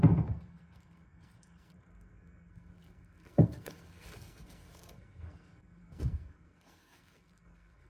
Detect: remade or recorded remade